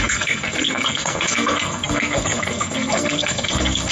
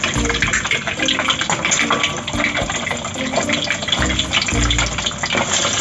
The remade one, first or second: first